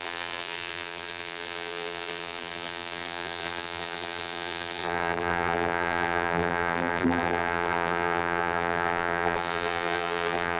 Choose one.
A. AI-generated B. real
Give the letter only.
A